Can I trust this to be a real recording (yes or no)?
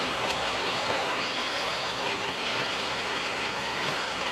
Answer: no